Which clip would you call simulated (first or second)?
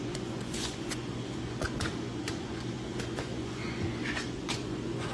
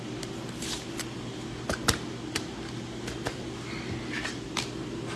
first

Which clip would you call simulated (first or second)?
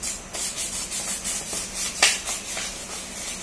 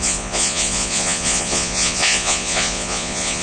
second